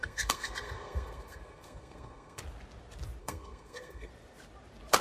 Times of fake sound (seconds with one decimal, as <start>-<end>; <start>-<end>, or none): 0.0-2.4; 3.2-4.1